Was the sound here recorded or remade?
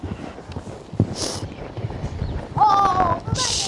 recorded